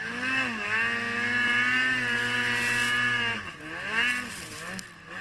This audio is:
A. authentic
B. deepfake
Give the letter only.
A